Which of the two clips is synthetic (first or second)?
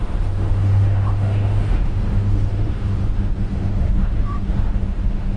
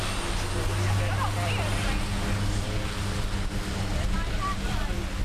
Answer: first